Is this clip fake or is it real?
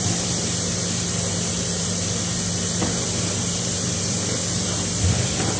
fake